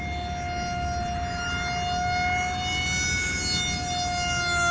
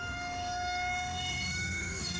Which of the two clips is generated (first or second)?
second